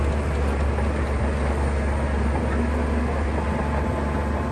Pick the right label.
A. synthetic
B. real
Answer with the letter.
B